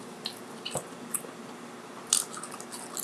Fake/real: real